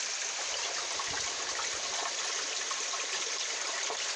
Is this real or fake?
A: real